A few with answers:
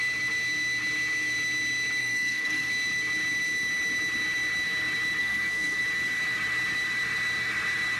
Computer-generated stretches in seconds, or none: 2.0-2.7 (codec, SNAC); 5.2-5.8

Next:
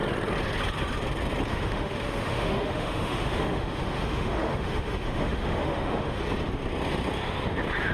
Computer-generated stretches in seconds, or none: 1.5-6.2 (autoencoder, DAC-VAE)

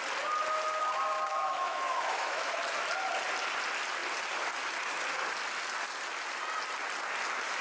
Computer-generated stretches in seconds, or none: 1.3-2.4 (autoencoder, DAC-VAE)